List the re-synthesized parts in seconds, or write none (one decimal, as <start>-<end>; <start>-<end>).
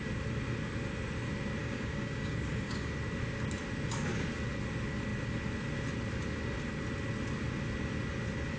1.6-2.9